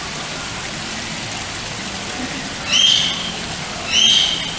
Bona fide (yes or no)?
yes